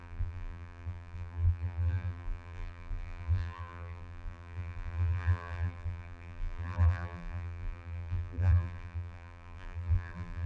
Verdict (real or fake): fake